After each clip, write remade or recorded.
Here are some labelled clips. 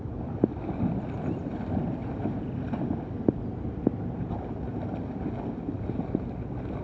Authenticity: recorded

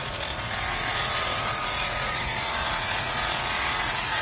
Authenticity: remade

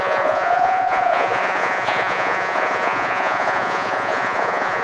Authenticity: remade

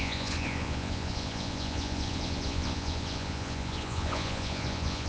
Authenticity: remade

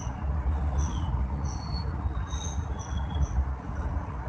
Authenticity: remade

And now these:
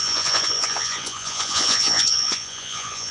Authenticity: remade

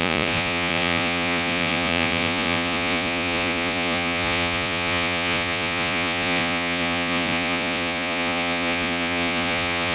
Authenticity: remade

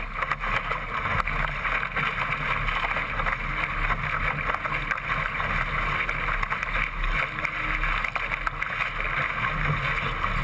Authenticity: recorded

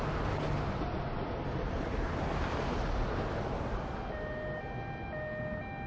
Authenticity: recorded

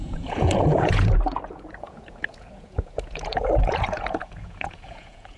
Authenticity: remade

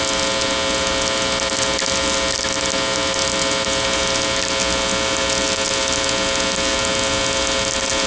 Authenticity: recorded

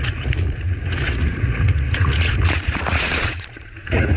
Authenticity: remade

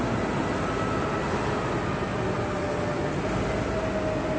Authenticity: recorded